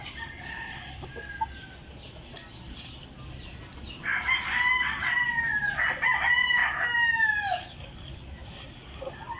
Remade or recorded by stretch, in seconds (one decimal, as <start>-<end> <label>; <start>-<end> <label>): 0.0-9.4 recorded